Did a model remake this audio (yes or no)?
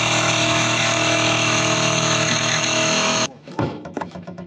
yes